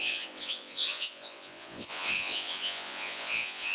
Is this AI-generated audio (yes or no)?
yes